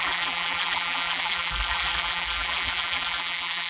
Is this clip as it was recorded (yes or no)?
no